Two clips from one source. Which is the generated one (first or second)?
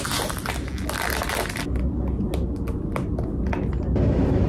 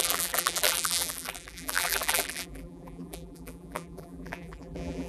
second